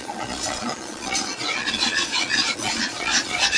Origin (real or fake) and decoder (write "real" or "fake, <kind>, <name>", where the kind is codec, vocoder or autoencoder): fake, vocoder, Vocos